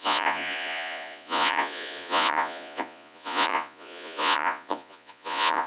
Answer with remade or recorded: remade